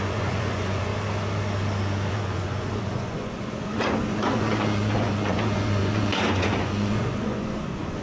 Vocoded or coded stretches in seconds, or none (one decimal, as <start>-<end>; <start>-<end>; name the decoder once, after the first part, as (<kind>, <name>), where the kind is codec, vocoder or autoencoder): 0.0-0.9 (vocoder, Vocos); 2.1-8.0